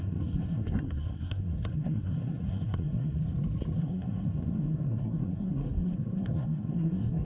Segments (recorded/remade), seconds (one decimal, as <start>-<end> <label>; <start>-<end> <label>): 0.0-3.2 remade; 3.2-3.8 recorded; 3.8-7.2 remade